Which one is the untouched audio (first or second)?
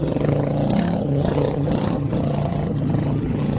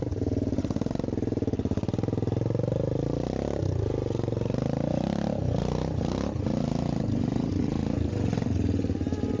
second